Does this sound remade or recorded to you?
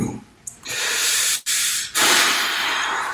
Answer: remade